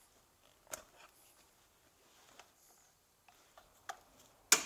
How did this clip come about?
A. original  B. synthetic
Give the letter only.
A